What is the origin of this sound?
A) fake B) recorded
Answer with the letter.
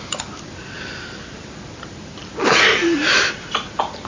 B